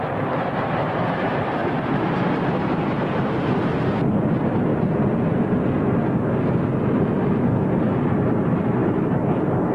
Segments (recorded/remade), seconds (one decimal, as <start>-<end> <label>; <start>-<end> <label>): 0.0-1.6 remade; 1.6-2.6 recorded; 2.6-4.7 remade; 4.7-7.8 recorded; 7.8-9.7 remade